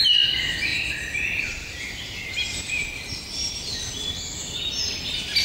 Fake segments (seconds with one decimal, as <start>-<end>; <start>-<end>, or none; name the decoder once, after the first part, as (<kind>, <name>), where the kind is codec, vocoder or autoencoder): 0.7-3.2 (vocoder, BigVGAN v2)